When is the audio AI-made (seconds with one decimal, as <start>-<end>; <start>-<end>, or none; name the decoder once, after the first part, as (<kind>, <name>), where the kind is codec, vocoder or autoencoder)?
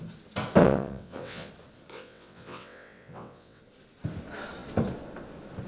0.6-1.5 (vocoder, WaveNeXt); 1.9-3.6